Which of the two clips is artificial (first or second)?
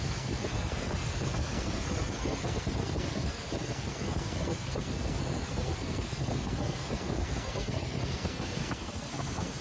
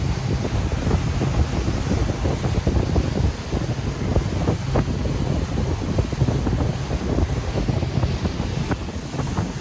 first